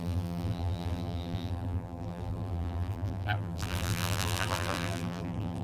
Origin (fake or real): fake